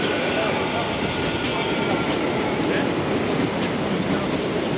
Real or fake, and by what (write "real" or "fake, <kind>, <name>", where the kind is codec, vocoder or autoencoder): real